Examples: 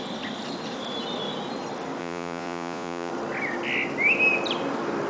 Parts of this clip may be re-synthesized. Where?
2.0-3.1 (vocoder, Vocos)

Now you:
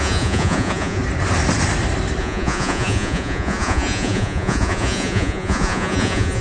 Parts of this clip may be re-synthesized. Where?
0.0-1.0 (vocoder, Vocos); 2.2-6.4

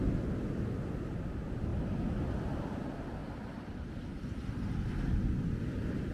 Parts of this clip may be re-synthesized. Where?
none

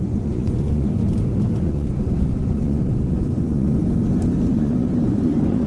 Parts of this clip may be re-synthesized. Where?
0.0-1.0 (vocoder, Vocos); 1.6-3.8; 4.5-5.7

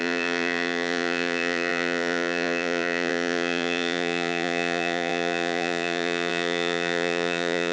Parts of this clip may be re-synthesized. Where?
0.0-7.7 (vocoder, Vocos)